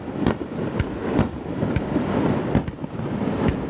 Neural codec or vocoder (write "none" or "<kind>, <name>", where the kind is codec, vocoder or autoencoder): none